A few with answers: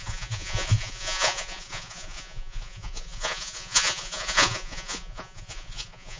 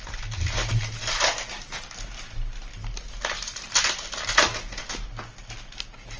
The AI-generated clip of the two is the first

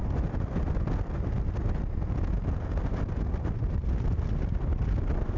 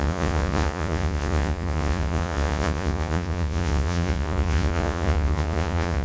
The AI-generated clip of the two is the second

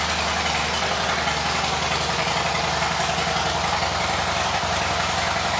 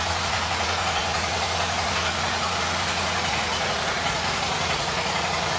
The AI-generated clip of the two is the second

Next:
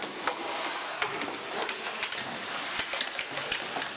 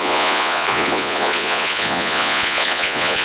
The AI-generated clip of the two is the second